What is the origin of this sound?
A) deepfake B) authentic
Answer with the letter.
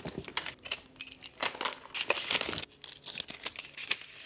B